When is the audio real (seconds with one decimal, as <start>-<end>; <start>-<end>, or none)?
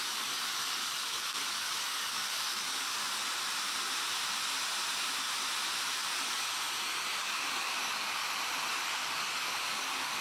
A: 3.0-7.2; 8.2-8.7